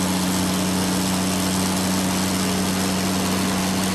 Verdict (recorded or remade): recorded